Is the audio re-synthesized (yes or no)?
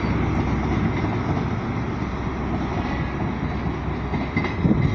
no